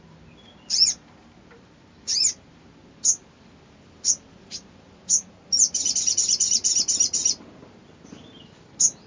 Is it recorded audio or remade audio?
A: recorded